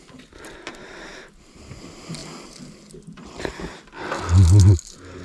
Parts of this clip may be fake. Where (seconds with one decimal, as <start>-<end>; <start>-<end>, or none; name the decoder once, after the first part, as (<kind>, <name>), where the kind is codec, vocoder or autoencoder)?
none